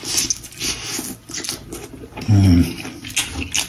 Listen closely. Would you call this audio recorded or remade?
recorded